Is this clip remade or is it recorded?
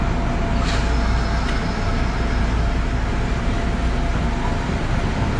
recorded